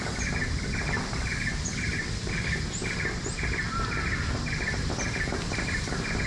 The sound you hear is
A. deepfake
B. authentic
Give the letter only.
B